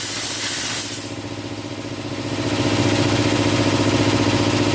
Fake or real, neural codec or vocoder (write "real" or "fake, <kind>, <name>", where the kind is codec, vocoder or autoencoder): real